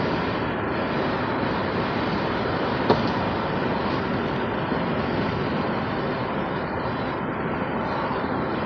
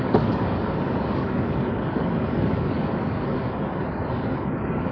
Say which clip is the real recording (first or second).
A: first